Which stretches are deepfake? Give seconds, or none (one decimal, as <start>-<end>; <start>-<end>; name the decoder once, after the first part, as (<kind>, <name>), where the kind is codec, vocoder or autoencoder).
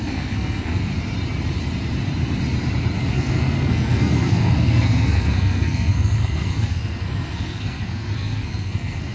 0.0-0.9 (codec, SNAC); 3.1-9.1